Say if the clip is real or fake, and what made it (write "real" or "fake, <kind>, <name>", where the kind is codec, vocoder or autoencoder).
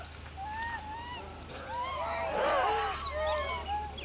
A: real